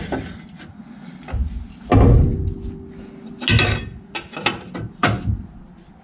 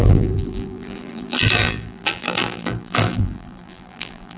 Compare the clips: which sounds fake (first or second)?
second